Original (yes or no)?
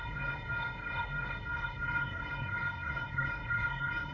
no